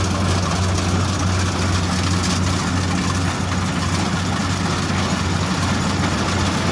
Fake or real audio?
real